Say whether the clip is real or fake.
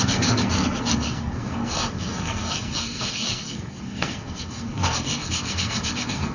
fake